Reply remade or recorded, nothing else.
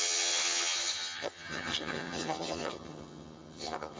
remade